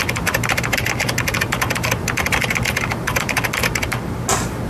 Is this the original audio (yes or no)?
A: yes